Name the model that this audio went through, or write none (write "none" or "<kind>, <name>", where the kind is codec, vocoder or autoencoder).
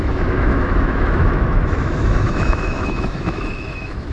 autoencoder, DAC-VAE